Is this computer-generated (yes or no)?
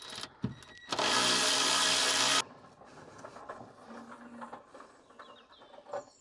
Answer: no